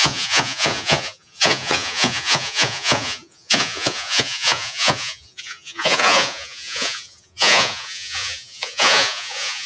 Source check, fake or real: fake